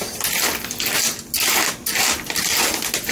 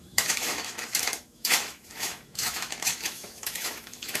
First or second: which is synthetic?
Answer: second